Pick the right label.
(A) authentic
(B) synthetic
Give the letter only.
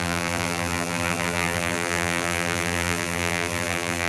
B